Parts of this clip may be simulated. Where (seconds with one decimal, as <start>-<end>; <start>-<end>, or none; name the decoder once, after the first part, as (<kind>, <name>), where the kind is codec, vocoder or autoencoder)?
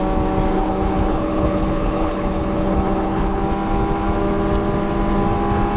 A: 0.5-3.4 (codec, HILCodec)